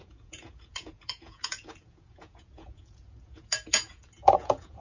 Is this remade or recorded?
remade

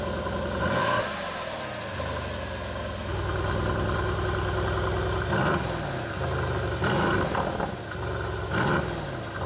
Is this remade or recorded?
recorded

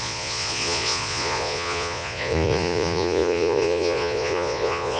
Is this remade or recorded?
remade